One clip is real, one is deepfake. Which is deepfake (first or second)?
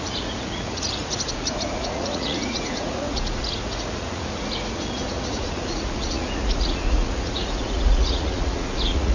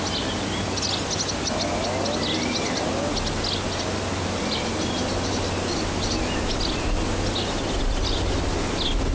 first